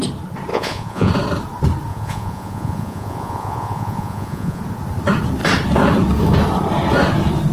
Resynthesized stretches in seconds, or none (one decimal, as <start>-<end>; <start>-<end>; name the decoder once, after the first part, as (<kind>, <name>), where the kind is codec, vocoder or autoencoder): 0.5-1.1 (vocoder, Vocos); 1.9-4.6